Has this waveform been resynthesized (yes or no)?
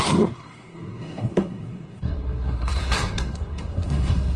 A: yes